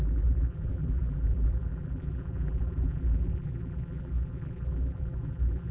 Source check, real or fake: fake